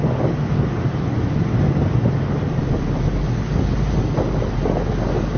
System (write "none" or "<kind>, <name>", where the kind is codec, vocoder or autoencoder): none